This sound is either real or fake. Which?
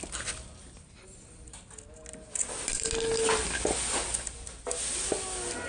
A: real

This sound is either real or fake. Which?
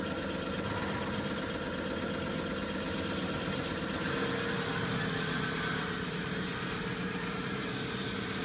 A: real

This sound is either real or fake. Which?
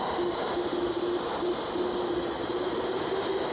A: real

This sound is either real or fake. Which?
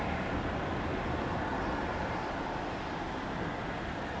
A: real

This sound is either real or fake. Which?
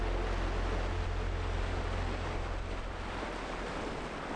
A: real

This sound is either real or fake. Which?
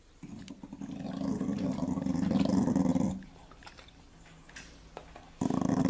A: real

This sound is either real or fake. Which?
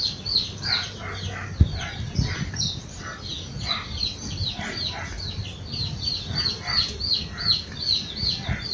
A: real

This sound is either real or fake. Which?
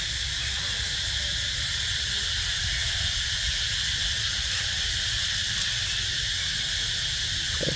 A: real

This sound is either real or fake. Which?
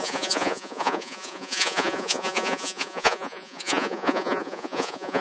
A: fake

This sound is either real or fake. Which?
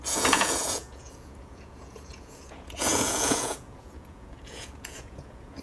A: fake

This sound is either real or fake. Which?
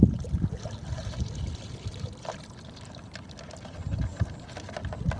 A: real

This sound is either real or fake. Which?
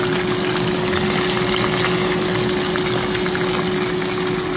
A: real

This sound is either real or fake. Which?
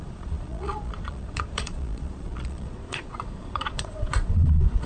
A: fake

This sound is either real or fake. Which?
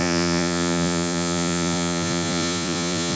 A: fake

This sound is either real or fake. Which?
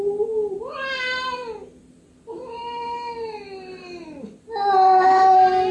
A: real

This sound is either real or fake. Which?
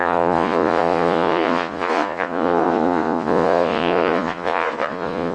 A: fake